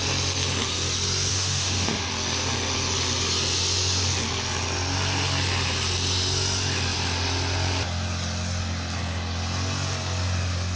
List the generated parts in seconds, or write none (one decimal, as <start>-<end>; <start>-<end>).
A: 1.3-2.1